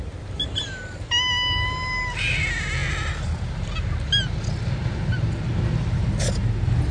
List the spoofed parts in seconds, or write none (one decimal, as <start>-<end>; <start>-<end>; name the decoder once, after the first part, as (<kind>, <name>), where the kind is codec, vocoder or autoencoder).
none